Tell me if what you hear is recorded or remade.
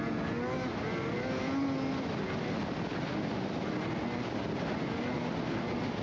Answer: recorded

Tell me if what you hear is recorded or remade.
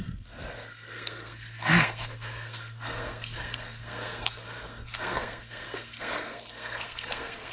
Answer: remade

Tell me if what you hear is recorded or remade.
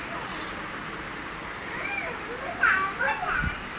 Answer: recorded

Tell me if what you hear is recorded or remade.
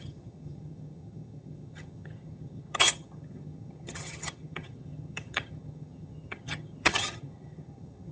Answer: remade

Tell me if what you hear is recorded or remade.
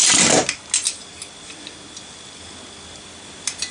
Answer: recorded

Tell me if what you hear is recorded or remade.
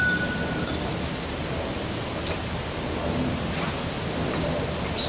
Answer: recorded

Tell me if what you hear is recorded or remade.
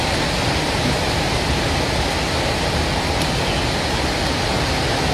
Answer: recorded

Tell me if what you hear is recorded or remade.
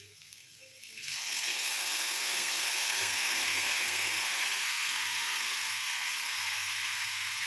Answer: remade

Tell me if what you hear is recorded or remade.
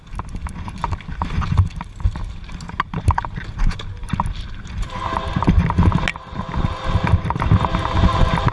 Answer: recorded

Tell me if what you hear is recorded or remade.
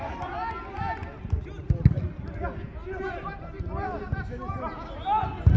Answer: recorded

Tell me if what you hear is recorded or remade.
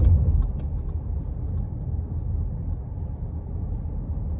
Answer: recorded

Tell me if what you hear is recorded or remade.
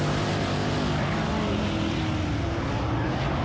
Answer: recorded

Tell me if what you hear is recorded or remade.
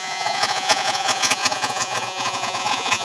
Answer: remade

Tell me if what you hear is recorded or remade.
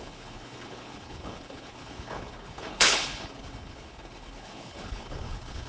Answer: remade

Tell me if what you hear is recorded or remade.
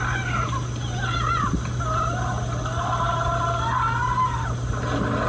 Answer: recorded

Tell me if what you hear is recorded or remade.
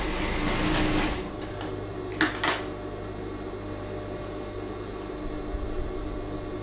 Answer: recorded